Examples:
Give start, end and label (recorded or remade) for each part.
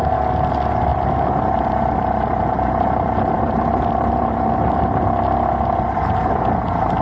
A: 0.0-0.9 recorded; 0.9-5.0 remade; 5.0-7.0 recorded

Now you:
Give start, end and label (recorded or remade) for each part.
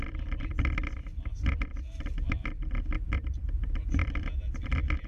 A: 0.0-5.1 remade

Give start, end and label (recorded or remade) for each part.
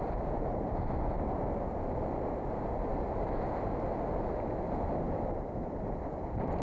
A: 0.0-6.6 recorded